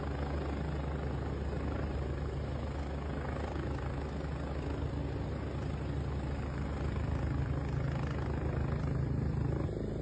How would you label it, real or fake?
real